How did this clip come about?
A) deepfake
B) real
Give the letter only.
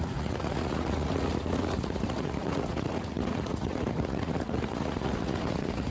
A